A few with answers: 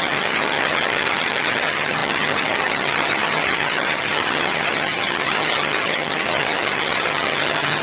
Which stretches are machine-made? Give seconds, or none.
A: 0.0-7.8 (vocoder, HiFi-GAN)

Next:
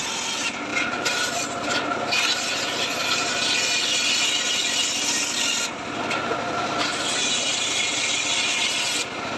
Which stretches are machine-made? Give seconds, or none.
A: none

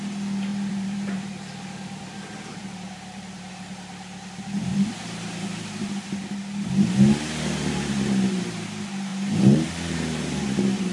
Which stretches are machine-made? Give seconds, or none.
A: 0.5-1.5 (vocoder, BigVGAN v2); 2.5-3.5; 4.7-6.9; 9.1-10.0

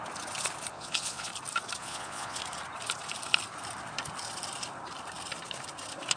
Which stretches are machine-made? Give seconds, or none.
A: 0.7-1.3 (vocoder, Vocos); 1.8-2.4

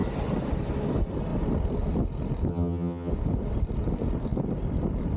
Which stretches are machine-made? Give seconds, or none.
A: 2.5-3.1 (vocoder, HiFi-GAN)